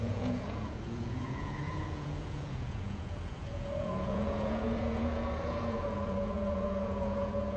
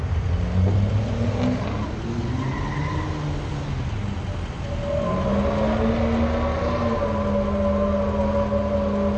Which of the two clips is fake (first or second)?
first